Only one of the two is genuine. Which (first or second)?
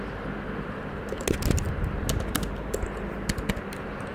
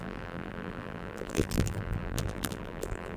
first